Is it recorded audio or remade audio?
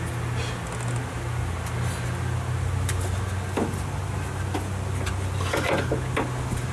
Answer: recorded